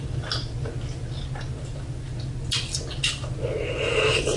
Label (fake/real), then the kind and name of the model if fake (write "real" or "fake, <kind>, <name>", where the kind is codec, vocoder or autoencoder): real